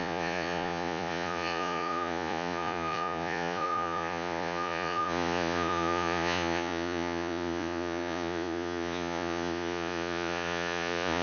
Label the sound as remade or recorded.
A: remade